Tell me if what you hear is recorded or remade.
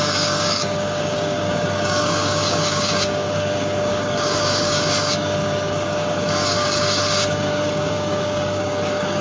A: remade